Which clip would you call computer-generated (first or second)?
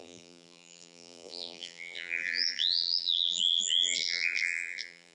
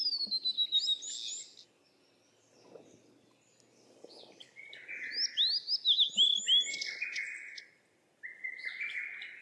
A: first